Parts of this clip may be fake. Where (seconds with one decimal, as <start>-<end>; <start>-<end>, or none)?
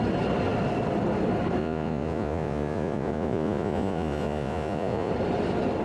1.6-5.1